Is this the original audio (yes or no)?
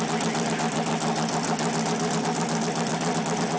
yes